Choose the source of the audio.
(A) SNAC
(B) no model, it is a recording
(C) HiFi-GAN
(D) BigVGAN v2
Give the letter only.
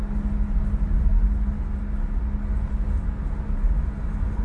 B